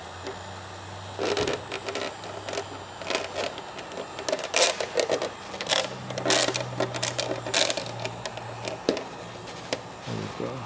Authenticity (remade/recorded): recorded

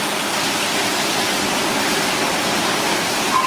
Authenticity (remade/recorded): recorded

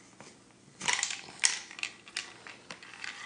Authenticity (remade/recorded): recorded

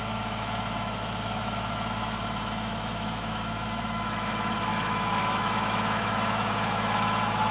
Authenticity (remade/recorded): remade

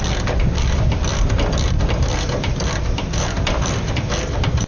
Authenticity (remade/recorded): remade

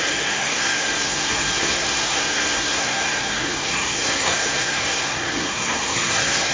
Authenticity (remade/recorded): remade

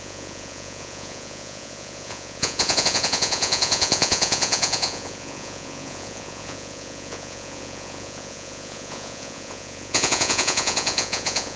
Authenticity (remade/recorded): remade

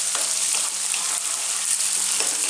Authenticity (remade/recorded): recorded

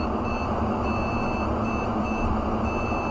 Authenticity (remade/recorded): recorded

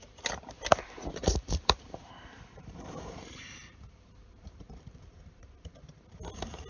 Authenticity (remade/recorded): remade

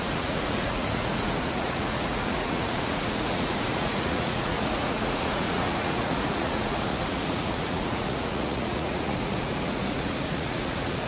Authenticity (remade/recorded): remade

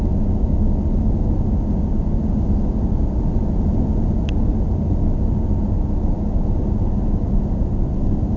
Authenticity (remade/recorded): recorded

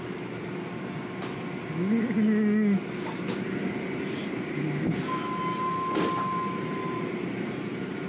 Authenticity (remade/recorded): recorded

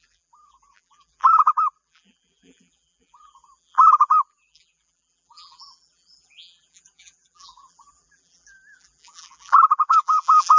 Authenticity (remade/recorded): remade